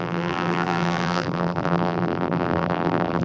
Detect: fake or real fake